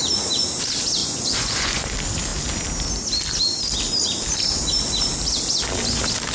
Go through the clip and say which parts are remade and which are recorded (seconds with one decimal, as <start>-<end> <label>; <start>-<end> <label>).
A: 0.0-1.0 recorded; 1.0-1.9 remade; 1.9-6.3 recorded